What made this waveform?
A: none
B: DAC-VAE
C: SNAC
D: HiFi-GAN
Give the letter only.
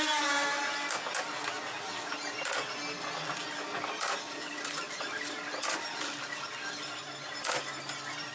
A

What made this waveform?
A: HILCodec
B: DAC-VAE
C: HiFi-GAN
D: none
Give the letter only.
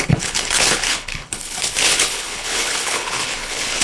A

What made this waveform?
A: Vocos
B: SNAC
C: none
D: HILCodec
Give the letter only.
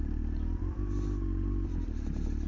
C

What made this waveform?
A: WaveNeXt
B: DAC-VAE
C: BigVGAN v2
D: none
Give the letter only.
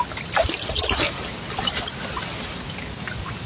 D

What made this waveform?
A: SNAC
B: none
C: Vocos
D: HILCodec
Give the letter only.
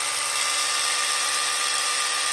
B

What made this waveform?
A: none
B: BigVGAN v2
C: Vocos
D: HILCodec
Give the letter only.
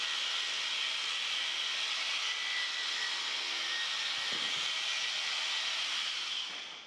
A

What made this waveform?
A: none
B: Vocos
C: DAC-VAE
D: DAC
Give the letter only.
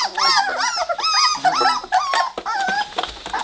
A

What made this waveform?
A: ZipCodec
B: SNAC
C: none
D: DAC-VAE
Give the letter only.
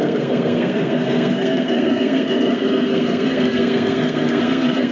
B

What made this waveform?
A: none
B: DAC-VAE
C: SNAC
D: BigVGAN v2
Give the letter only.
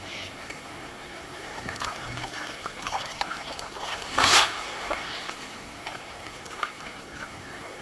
C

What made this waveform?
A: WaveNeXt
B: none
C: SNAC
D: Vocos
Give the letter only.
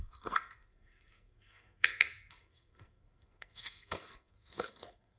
C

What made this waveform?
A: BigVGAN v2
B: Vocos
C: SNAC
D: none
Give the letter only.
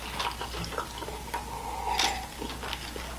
D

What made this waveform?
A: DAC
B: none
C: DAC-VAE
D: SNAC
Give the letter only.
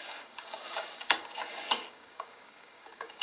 A